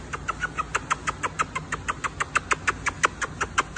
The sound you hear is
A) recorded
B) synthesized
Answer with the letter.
A